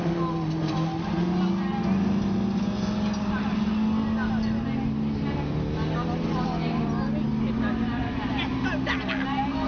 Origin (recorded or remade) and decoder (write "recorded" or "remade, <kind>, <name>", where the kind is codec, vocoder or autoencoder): recorded